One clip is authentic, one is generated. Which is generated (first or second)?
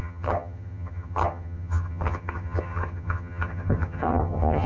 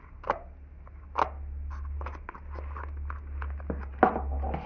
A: first